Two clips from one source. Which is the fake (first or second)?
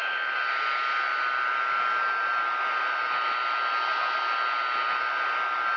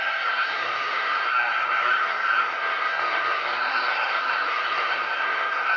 second